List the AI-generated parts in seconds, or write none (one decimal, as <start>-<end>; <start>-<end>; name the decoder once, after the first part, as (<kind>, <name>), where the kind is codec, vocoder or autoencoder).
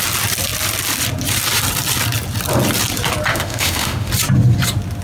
3.3-4.1 (autoencoder, DAC-VAE)